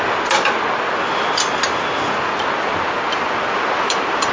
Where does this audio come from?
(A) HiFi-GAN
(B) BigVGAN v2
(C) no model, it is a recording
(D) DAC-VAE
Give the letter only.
C